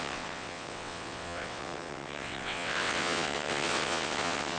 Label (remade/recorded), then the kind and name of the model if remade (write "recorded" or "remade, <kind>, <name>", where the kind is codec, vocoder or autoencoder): remade, vocoder, WaveNeXt